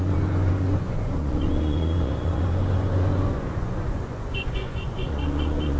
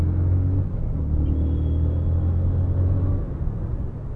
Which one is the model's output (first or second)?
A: first